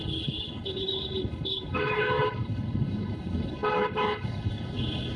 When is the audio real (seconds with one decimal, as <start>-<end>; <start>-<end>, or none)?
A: none